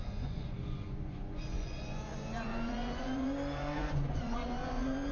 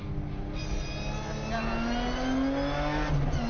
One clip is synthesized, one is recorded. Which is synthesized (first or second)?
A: first